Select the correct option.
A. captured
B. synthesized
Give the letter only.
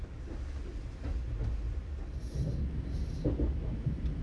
A